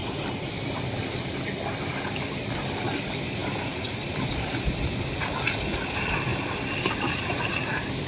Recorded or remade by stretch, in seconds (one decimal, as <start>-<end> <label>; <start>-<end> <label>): 0.0-8.1 recorded